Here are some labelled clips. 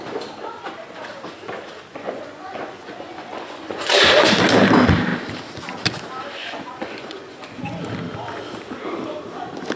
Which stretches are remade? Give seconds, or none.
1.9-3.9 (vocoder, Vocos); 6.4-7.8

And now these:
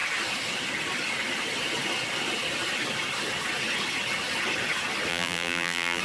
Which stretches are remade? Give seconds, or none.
5.1-6.0 (vocoder, BigVGAN v2)

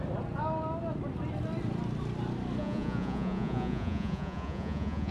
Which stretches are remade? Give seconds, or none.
2.6-5.1 (vocoder, Vocos)

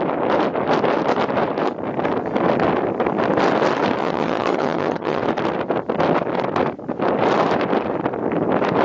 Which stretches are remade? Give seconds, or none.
4.0-5.2 (vocoder, HiFi-GAN)